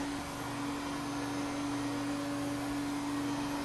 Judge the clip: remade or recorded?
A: recorded